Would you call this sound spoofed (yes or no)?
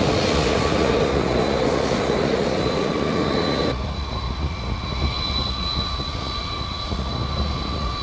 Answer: yes